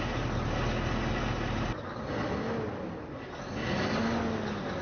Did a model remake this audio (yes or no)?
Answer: no